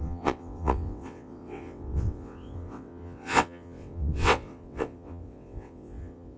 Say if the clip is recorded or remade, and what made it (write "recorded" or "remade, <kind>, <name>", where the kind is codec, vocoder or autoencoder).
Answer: remade, vocoder, WaveNeXt